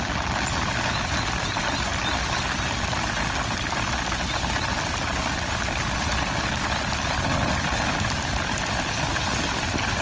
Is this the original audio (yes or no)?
yes